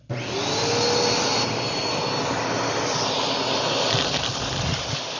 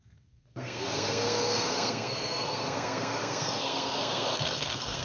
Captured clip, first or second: first